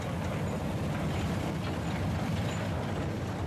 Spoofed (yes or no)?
yes